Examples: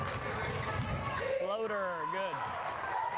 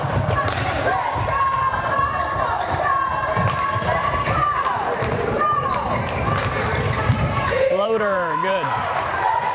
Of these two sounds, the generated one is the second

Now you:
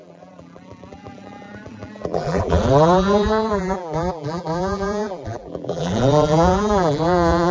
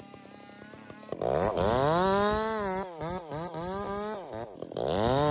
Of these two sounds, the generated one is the first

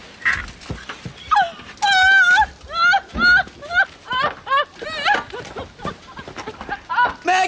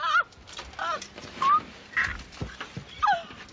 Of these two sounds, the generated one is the second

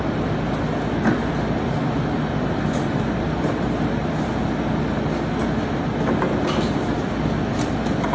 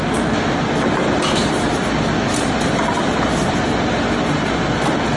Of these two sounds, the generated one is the second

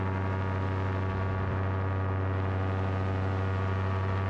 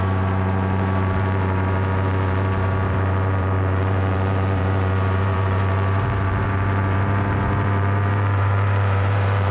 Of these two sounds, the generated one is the second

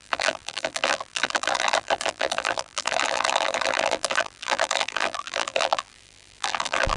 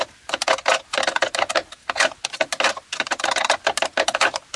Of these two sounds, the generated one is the first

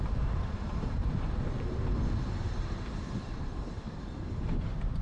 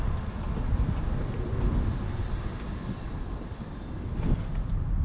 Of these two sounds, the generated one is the first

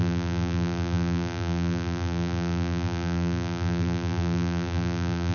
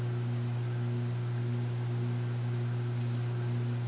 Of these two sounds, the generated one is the first